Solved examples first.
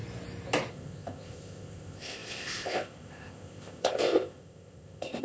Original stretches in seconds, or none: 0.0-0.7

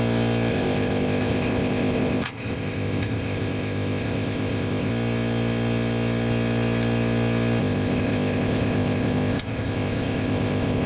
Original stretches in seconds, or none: 0.0-0.5; 4.9-7.6

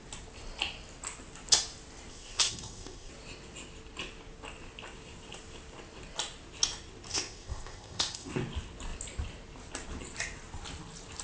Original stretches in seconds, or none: 0.0-2.1; 3.1-7.1; 8.3-11.2

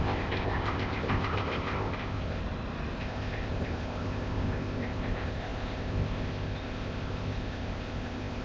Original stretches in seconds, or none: 2.4-3.0

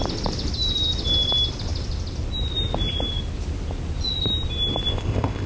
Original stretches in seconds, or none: 0.0-4.9

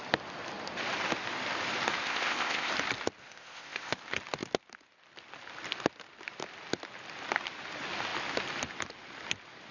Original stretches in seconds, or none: 0.0-2.0; 2.7-3.2; 4.0-9.7